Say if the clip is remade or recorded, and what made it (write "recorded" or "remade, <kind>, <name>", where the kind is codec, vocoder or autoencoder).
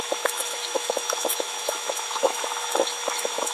remade, autoencoder, DAC-VAE